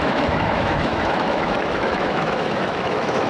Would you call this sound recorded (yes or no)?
no